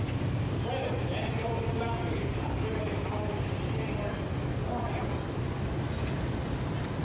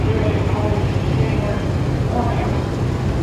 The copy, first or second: first